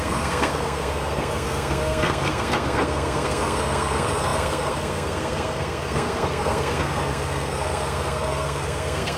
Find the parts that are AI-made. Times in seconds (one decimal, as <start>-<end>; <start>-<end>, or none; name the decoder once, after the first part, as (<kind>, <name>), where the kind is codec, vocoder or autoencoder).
0.0-9.2 (codec, SNAC)